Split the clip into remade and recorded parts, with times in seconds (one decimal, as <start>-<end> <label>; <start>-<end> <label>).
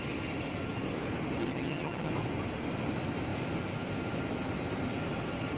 0.0-1.4 recorded; 1.4-2.1 remade; 2.1-5.6 recorded